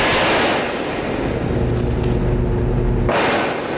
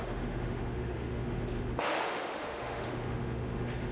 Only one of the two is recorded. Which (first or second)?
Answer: first